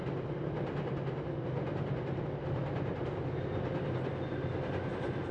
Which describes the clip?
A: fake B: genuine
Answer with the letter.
B